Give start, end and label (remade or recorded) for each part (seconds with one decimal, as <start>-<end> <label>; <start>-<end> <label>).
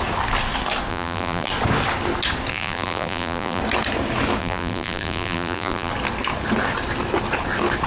0.0-0.9 recorded; 0.9-1.5 remade; 1.5-2.5 recorded; 2.5-3.6 remade; 3.6-4.4 recorded; 4.4-5.9 remade; 5.9-7.9 recorded